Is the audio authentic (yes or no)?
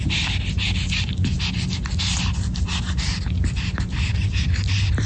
yes